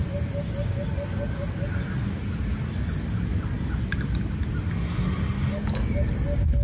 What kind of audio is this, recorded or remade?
recorded